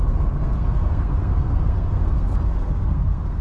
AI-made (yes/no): yes